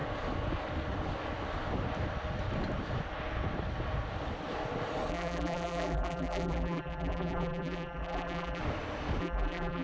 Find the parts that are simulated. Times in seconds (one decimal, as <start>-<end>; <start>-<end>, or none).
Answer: 5.1-8.6; 9.2-9.8